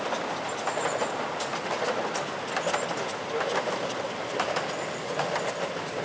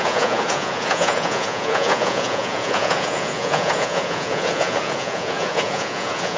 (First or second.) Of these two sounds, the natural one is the first